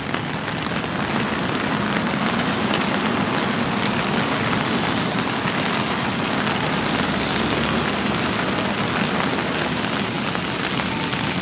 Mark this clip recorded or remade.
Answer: recorded